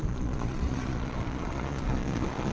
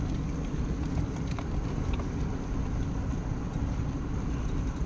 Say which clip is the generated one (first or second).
first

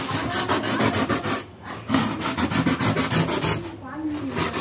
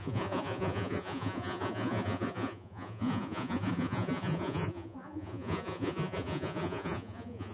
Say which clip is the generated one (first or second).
second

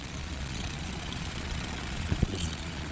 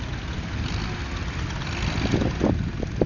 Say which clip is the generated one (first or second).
first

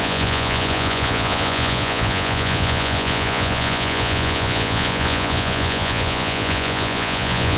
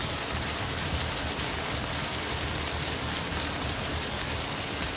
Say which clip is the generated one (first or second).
first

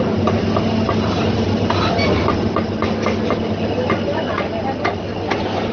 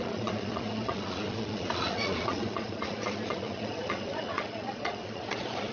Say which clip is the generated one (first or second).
second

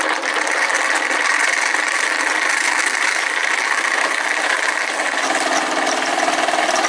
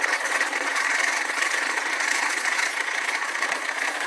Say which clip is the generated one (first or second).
second